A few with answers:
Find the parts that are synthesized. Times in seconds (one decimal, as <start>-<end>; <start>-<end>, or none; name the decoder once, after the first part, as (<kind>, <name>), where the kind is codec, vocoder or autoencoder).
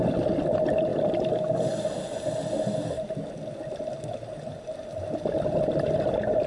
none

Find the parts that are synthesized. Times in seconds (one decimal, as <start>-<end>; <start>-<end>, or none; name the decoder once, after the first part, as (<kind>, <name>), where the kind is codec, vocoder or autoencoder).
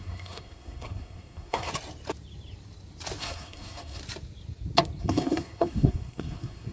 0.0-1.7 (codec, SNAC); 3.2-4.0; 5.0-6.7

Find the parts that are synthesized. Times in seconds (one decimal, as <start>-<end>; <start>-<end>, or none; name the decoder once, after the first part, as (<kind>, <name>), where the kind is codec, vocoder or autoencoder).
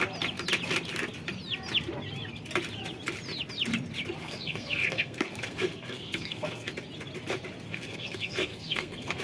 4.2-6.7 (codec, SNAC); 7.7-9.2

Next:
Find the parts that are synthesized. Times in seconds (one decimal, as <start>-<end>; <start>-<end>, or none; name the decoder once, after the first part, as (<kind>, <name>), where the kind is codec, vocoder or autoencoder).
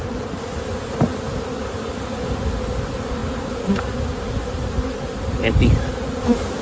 none